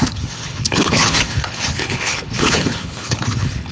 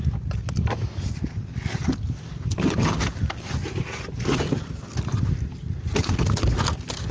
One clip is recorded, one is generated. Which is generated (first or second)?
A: first